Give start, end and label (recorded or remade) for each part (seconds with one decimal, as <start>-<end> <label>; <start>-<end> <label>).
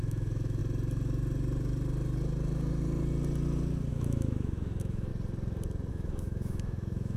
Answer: 0.0-0.6 remade; 0.6-3.9 recorded; 3.9-5.1 remade; 5.1-5.9 recorded; 5.9-7.2 remade